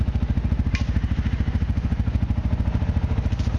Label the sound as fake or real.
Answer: real